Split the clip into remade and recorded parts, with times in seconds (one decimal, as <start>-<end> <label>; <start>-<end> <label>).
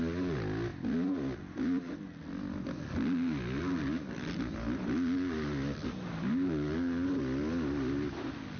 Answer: 0.0-8.6 recorded